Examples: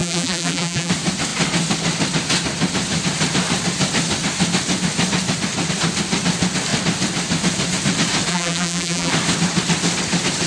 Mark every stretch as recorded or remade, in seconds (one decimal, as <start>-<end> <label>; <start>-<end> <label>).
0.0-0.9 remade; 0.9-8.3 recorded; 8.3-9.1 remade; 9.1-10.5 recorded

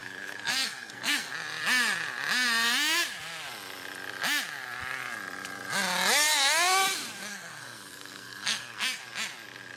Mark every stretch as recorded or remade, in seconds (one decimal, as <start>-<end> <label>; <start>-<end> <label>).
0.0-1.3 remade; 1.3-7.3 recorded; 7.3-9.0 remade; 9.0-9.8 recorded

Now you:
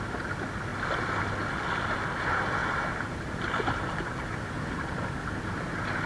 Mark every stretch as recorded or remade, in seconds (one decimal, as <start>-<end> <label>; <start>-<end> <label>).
0.0-2.6 recorded; 2.6-4.1 remade; 4.1-6.1 recorded